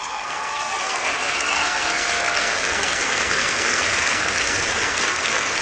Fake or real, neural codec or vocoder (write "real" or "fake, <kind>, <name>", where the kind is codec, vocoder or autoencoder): fake, codec, SNAC